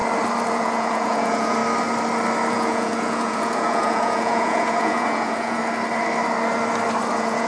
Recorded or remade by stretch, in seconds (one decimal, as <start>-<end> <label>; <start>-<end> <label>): 0.0-0.5 recorded; 0.5-1.6 remade; 1.6-2.5 recorded; 2.5-5.6 remade; 5.6-7.1 recorded; 7.1-7.5 remade